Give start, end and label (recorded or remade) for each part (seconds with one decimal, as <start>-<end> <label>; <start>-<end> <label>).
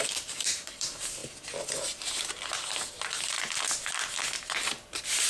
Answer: 0.0-1.2 remade; 1.2-4.4 recorded; 4.4-5.3 remade